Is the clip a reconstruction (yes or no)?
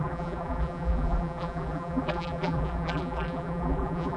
yes